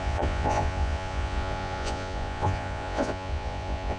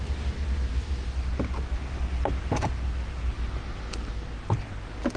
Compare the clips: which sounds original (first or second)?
second